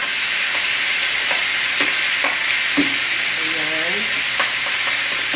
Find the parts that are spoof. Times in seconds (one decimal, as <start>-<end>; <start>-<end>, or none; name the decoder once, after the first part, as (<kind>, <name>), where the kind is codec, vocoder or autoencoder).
0.0-0.7 (codec, DAC)